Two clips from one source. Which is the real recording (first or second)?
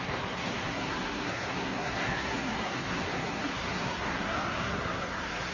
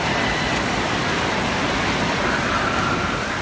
second